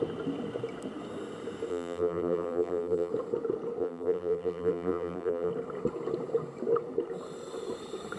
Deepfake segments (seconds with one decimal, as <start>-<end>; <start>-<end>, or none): 1.7-3.1; 3.8-5.5